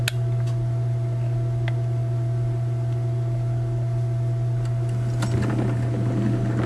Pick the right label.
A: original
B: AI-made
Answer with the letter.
A